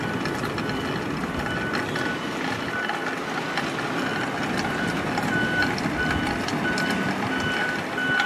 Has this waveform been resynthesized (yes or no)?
no